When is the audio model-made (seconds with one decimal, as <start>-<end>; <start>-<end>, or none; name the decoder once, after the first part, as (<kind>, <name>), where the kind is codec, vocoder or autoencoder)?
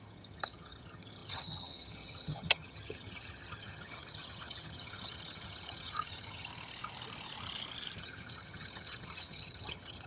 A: 0.0-6.5 (vocoder, HiFi-GAN); 8.0-10.1